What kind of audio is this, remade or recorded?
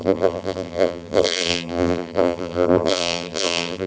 remade